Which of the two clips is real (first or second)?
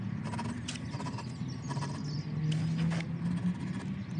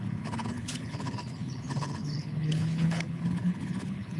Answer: first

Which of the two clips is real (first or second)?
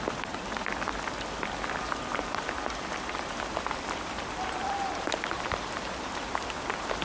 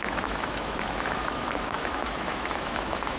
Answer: first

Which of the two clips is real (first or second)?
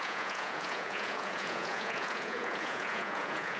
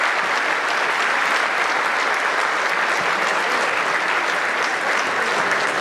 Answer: second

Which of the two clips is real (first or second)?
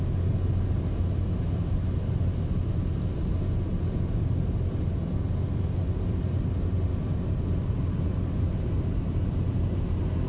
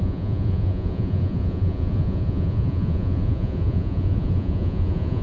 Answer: first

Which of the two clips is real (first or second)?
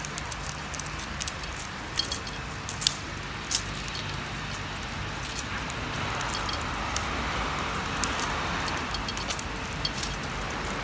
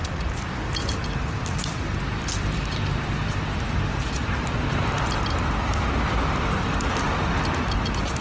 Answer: first